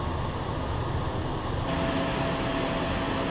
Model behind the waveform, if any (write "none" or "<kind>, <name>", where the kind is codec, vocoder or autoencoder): none